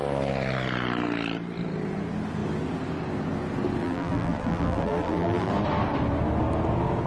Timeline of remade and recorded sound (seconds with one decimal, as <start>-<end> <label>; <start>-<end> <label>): 0.0-3.8 recorded; 3.8-5.5 remade; 5.5-7.1 recorded